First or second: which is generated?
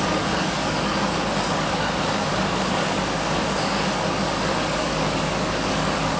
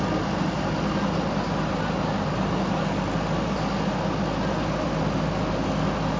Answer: first